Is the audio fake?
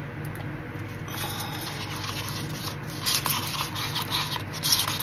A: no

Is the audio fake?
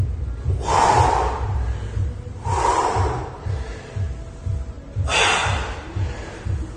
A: no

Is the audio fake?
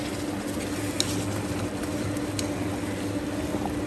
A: no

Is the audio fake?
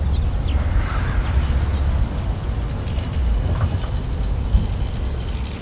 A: no